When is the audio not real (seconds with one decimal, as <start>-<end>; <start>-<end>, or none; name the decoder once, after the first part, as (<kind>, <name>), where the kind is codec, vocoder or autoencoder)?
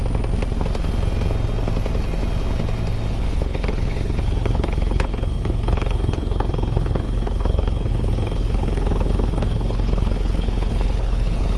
3.1-11.6 (codec, HILCodec)